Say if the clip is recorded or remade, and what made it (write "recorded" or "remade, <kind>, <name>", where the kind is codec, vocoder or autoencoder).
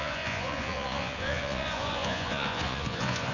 remade, vocoder, Vocos